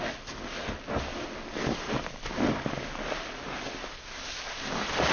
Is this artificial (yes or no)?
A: no